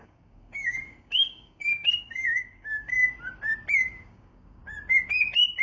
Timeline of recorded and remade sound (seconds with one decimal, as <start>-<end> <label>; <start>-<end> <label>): 0.0-3.0 remade; 3.0-3.8 recorded; 3.8-4.6 remade; 4.6-5.6 recorded